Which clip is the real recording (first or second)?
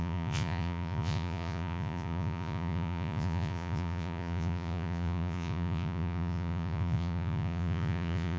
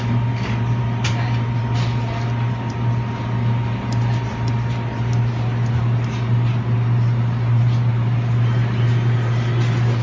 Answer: second